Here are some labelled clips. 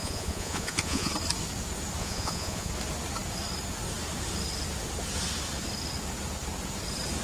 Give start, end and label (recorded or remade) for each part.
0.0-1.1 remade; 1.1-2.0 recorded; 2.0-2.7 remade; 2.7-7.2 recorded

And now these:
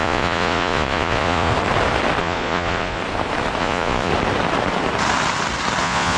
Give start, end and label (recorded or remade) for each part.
0.0-1.5 remade; 1.5-2.2 recorded; 2.2-3.0 remade; 3.0-3.6 recorded; 3.6-4.1 remade; 4.1-5.8 recorded; 5.8-6.2 remade

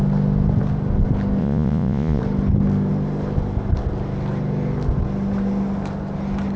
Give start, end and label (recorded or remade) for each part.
0.0-1.4 recorded; 1.4-2.2 remade; 2.2-6.6 recorded